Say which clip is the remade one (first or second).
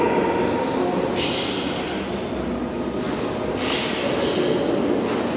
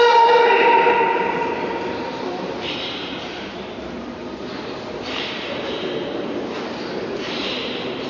second